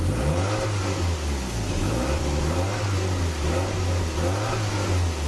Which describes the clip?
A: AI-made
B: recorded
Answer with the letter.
B